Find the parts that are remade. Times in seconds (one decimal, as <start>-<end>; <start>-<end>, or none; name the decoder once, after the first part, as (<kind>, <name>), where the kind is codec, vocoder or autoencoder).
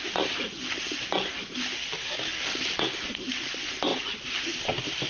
none